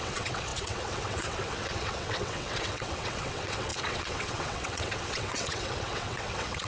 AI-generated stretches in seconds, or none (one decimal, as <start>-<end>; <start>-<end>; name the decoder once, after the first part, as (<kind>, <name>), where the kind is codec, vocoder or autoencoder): 0.0-6.7 (vocoder, WaveNeXt)